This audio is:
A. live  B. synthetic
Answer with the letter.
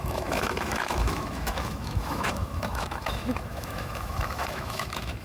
B